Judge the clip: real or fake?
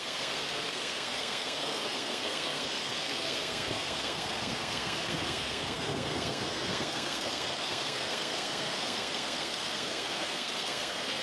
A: fake